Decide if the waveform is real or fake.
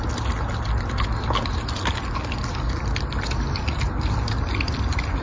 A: real